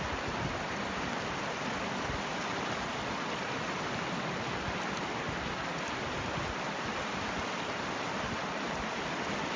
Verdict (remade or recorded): recorded